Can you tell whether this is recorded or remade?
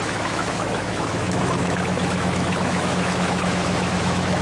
remade